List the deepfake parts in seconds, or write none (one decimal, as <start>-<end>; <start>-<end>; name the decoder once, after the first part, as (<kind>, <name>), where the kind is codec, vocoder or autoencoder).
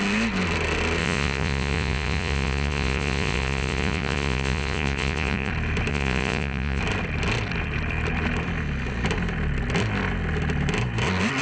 1.0-5.5 (vocoder, Vocos); 5.9-6.8